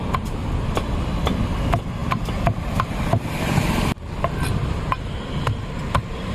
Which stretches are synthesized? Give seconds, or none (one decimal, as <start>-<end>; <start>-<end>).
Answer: 0.4-1.0; 2.0-5.3